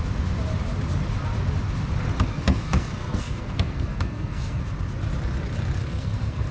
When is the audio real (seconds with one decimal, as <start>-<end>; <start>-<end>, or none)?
0.0-2.3; 4.6-5.8